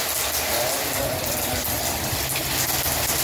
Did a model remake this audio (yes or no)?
no